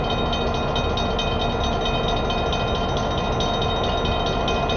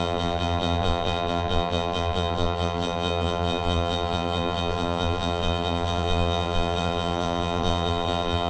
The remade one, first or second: second